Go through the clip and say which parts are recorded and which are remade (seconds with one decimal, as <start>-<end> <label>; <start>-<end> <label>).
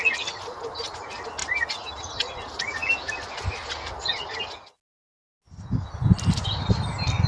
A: 0.0-7.3 recorded